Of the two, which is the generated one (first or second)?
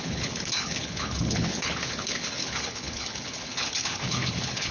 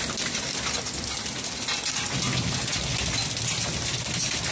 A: first